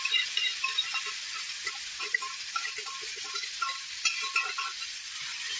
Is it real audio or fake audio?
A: real